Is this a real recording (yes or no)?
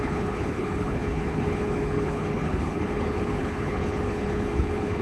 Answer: no